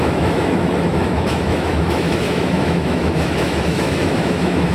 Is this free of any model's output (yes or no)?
no